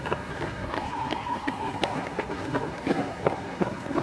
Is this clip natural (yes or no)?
no